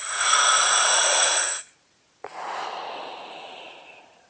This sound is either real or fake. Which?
fake